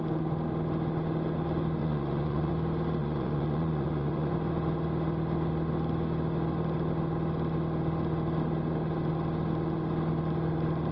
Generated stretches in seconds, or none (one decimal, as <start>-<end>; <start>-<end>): 1.8-2.5; 3.0-4.3

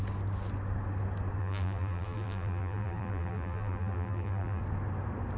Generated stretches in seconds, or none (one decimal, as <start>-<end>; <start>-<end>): 1.4-4.6

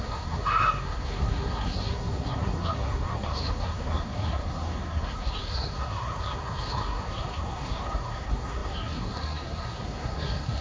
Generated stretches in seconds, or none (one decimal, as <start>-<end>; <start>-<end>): 0.0-10.6

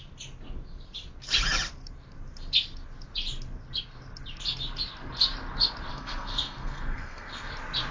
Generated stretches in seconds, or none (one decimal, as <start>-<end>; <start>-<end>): 5.9-7.5

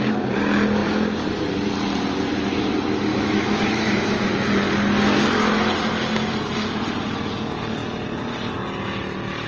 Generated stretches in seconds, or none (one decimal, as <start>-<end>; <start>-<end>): 3.1-4.5

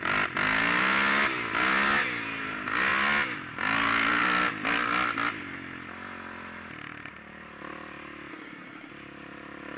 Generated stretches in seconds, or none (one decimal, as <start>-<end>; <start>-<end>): 8.3-8.9

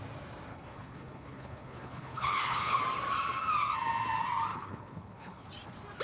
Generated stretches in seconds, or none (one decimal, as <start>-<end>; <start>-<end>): 0.5-2.8; 4.5-5.5

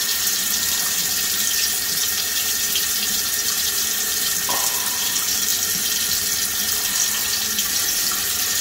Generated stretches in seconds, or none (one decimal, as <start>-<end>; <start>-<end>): 0.0-1.0; 1.7-4.1; 5.0-5.5; 7.7-8.6